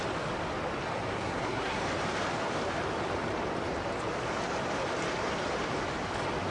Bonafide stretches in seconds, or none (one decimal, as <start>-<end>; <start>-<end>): 0.0-1.1; 1.8-6.5

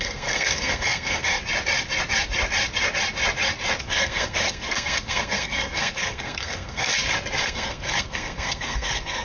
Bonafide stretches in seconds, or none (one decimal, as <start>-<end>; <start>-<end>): 1.4-3.8; 6.9-7.4

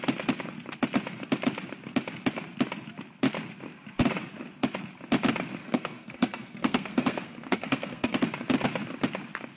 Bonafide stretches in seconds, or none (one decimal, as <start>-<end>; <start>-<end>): 0.0-5.6; 8.2-9.6

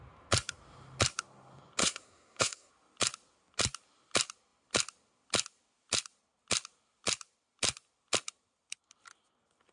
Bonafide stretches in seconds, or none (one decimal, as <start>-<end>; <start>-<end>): 0.0-1.8; 2.7-9.7

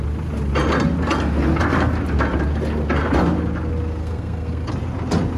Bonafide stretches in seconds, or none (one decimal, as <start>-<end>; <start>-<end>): 0.0-4.0; 4.7-5.4

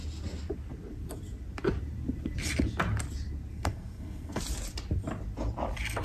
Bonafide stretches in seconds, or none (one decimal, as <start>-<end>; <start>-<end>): 0.0-3.5; 4.4-6.0